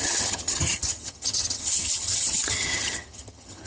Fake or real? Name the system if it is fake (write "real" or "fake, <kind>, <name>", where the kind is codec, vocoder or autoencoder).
fake, vocoder, HiFi-GAN